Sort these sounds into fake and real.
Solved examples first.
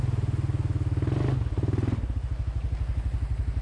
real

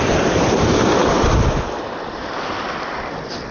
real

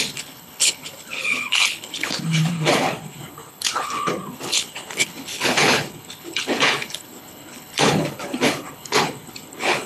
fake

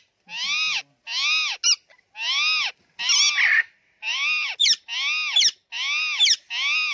real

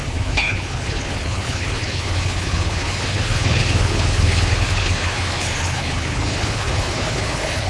fake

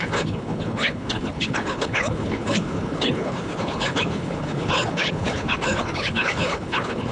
fake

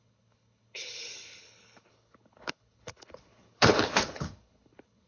fake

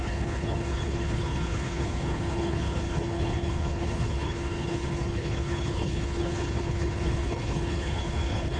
fake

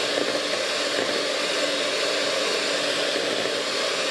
real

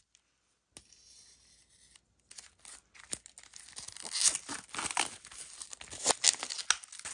real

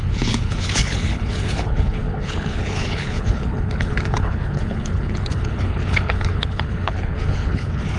fake